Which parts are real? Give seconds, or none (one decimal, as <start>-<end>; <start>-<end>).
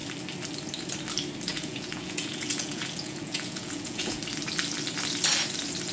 0.0-1.5; 4.2-5.9